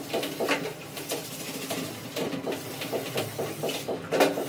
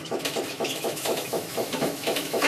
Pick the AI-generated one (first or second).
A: second